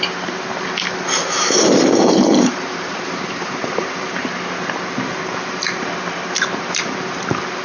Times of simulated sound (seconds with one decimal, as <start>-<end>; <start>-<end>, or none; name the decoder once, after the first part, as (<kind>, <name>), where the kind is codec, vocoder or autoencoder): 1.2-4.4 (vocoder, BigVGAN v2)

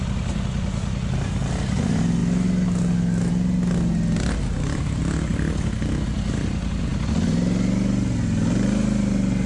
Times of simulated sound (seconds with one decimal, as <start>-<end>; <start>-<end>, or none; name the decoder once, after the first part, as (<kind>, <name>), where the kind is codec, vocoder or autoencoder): 5.3-5.8 (vocoder, BigVGAN v2)

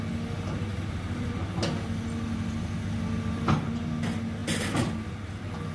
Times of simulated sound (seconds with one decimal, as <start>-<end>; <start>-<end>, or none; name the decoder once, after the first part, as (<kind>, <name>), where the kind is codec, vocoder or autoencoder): 0.7-1.3 (vocoder, BigVGAN v2)

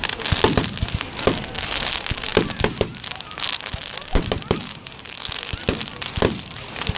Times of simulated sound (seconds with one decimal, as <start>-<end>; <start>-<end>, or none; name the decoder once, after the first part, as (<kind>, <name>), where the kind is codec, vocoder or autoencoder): none